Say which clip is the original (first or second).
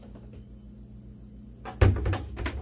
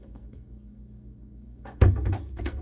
first